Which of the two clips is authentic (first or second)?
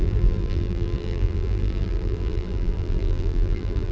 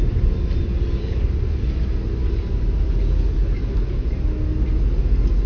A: second